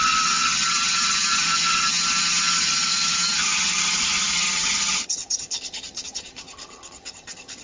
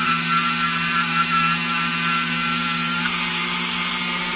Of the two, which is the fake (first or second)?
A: first